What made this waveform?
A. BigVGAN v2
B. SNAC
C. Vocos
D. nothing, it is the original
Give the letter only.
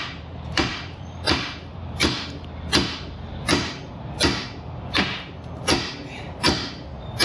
A